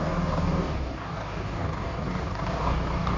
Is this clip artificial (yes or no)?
yes